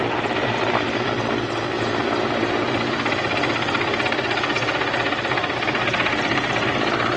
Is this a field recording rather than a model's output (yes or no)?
yes